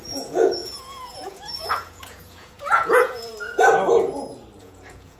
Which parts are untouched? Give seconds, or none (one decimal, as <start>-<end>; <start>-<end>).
3.3-4.6